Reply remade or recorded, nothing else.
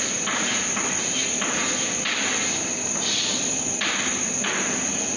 recorded